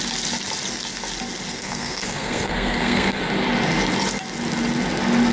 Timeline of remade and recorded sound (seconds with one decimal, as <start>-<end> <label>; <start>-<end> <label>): 0.0-1.5 recorded; 1.5-3.2 remade; 3.2-5.3 recorded

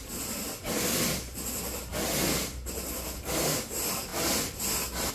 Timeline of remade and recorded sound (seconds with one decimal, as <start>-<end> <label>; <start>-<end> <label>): 0.0-5.1 recorded

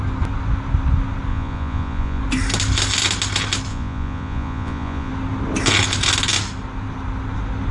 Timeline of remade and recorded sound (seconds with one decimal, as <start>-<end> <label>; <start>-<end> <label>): 0.0-1.3 recorded; 1.3-2.2 remade; 2.2-3.7 recorded; 3.7-5.1 remade; 5.1-7.7 recorded